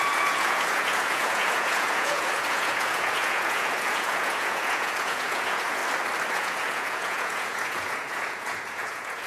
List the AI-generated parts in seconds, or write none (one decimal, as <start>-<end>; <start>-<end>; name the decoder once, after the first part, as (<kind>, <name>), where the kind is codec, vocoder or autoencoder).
0.0-5.8 (vocoder, Vocos); 6.3-9.3